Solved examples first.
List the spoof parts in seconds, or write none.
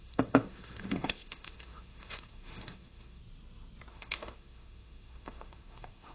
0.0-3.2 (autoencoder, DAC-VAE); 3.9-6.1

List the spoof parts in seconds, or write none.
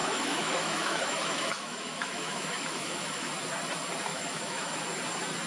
0.0-3.3 (autoencoder, DAC-VAE); 4.1-4.8